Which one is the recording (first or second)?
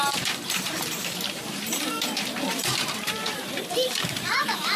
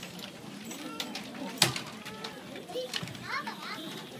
second